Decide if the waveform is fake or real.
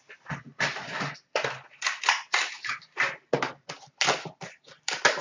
fake